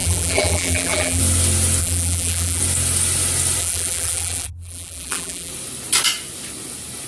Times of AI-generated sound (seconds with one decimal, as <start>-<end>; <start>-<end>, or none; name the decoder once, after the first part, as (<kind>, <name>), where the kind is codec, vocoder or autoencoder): 0.0-1.2 (vocoder, BigVGAN v2); 1.8-2.6; 3.6-5.5